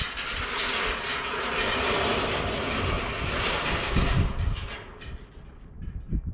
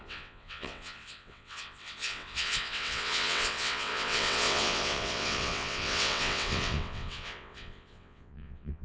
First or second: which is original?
first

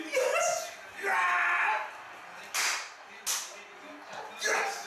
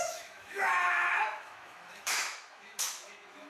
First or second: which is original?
first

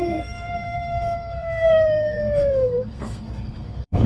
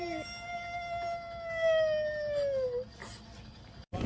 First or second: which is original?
second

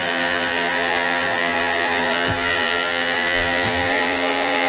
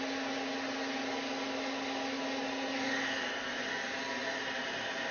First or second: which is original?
second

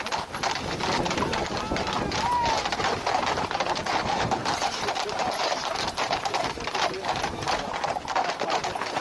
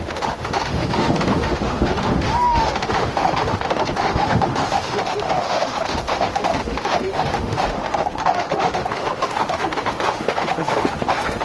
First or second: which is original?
first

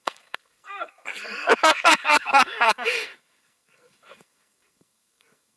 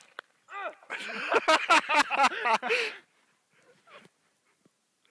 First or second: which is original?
second